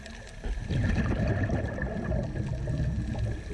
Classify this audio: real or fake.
real